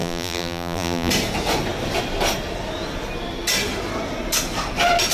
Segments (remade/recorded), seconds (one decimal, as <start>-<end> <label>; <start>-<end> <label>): 0.0-1.1 remade; 1.1-5.1 recorded